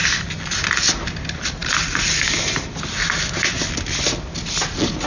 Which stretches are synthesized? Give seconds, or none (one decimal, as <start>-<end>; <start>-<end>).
none